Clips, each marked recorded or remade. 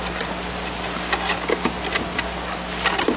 recorded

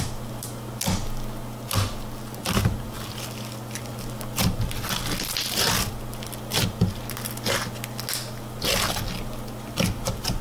recorded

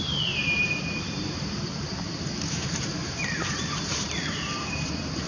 remade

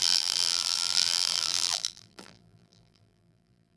remade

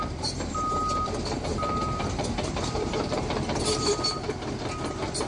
remade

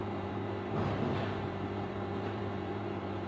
remade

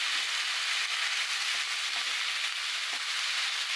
recorded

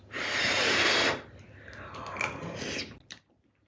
recorded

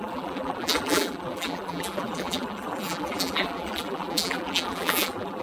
remade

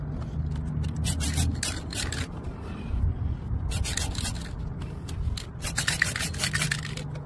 recorded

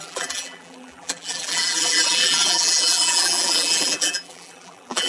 remade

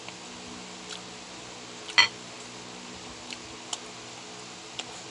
recorded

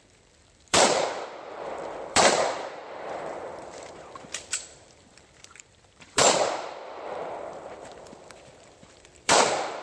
remade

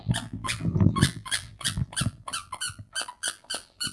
remade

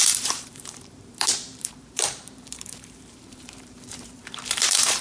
remade